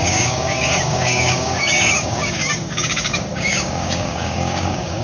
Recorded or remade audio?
remade